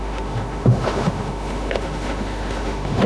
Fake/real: fake